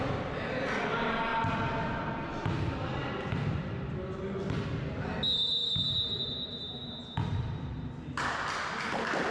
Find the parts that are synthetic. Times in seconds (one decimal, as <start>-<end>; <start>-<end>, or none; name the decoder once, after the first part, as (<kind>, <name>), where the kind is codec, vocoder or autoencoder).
none